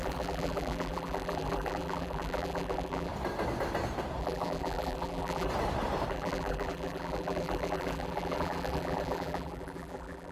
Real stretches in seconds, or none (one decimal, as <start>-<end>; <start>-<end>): 3.1-4.2; 5.5-6.1